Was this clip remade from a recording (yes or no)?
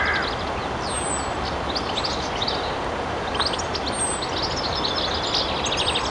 no